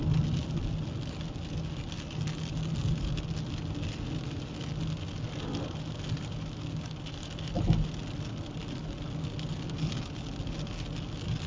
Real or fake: real